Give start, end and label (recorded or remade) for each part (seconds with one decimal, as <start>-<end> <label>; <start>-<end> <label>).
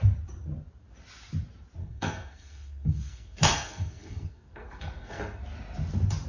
0.0-1.8 recorded; 1.8-5.4 remade; 5.4-6.3 recorded